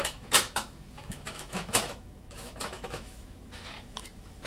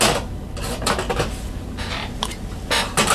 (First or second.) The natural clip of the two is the second